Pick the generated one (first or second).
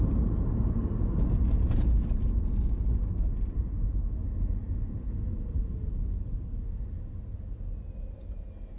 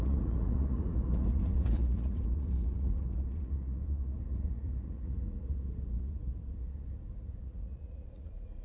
second